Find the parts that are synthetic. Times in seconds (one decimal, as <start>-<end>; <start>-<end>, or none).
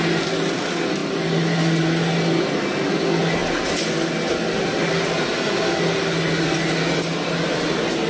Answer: none